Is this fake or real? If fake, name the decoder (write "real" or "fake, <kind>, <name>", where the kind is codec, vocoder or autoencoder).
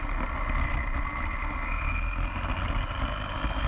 real